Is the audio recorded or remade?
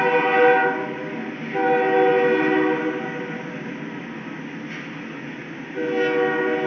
recorded